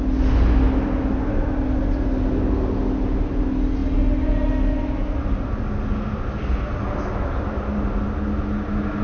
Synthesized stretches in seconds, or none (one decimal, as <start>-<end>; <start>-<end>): none